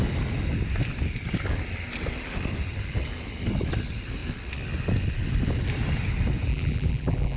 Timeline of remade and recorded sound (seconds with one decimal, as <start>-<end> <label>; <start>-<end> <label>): 0.0-6.5 recorded; 6.5-7.4 remade

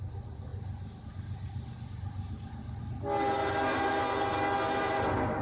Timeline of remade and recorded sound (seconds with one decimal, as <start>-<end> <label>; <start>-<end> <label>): 0.0-5.4 recorded

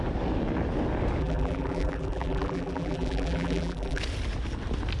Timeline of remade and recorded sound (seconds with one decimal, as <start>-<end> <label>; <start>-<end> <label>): 0.0-1.2 recorded; 1.2-4.0 remade; 4.0-5.0 recorded

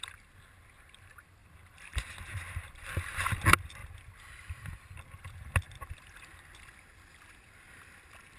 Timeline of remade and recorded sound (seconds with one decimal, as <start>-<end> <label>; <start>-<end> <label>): 0.0-8.4 remade